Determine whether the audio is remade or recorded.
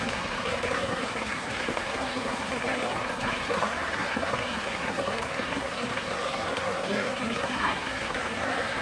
remade